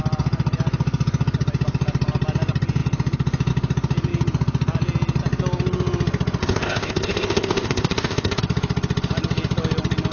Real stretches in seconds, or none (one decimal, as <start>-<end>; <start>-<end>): 0.0-6.4; 8.4-10.1